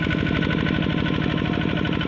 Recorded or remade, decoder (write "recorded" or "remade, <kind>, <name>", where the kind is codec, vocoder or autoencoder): recorded